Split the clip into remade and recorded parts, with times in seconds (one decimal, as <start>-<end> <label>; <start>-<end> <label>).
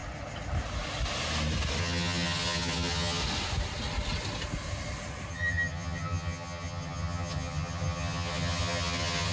0.0-1.8 recorded; 1.8-3.2 remade; 3.2-5.3 recorded; 5.3-9.3 remade